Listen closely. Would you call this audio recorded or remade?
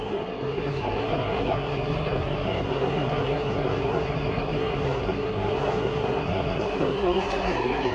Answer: remade